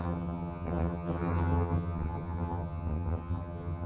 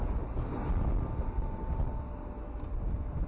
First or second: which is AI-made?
first